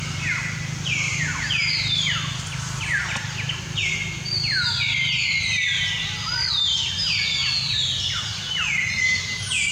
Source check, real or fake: real